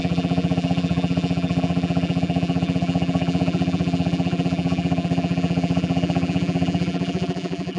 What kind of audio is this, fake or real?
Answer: fake